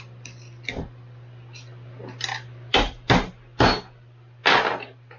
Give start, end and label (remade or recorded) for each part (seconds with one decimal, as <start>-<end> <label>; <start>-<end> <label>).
0.0-5.2 recorded